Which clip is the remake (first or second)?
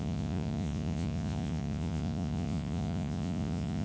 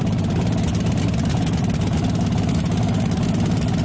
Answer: first